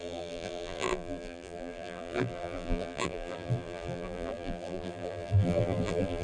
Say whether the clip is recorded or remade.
remade